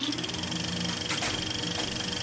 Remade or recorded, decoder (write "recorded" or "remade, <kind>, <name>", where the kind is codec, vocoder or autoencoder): recorded